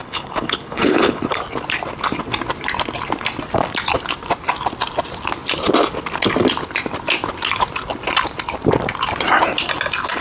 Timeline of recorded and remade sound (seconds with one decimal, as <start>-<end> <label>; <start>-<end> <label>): 0.0-1.4 remade; 1.4-10.2 recorded